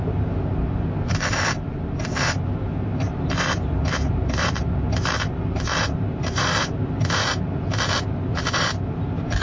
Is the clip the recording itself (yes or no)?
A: no